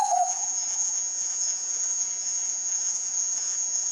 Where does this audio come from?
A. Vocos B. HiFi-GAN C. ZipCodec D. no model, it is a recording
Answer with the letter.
A